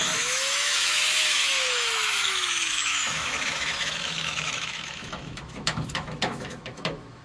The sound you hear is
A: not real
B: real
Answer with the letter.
A